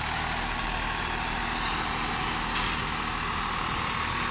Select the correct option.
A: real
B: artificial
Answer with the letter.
A